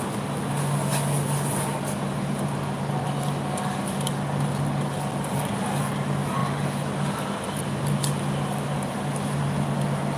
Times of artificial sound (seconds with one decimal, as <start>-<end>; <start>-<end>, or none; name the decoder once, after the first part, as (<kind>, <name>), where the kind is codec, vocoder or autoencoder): none